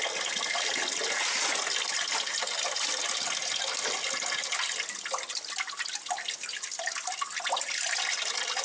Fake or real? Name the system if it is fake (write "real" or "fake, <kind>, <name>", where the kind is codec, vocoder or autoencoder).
real